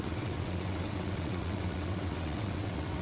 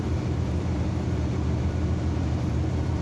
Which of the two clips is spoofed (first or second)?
first